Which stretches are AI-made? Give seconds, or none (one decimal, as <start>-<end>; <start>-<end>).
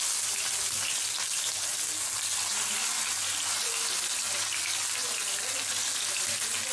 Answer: none